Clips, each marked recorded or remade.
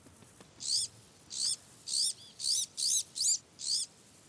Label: recorded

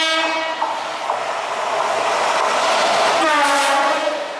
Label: recorded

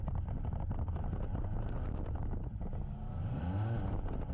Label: recorded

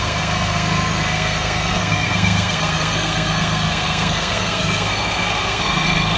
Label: remade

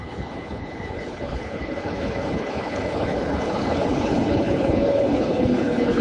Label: remade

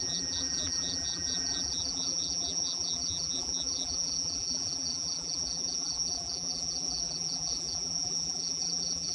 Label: remade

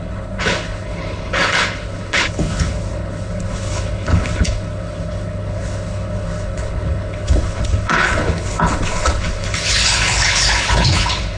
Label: remade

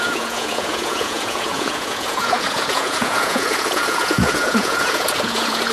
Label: remade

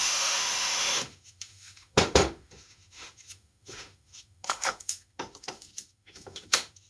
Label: remade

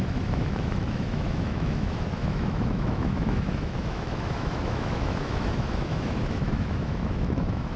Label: remade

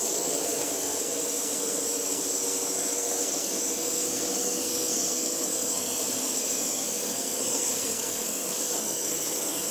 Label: remade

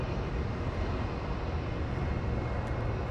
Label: recorded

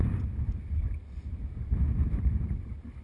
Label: recorded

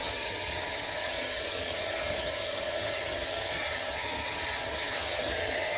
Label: remade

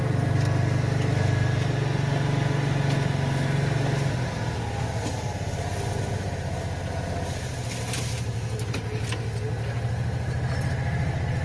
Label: recorded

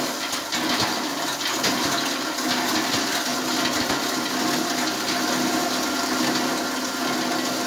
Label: recorded